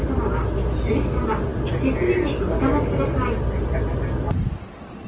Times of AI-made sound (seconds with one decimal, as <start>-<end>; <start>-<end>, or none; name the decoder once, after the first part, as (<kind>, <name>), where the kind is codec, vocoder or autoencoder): none

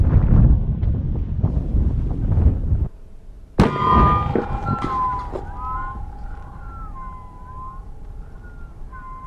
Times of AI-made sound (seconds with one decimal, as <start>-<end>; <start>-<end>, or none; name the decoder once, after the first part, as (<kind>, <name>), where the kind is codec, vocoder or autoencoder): none